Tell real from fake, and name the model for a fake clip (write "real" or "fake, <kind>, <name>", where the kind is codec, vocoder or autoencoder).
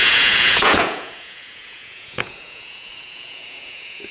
fake, vocoder, Vocos